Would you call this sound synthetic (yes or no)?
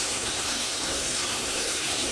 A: yes